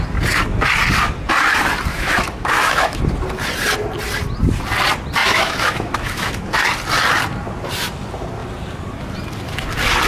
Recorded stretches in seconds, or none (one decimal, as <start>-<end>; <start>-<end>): 0.0-1.9; 3.0-5.2; 6.6-10.1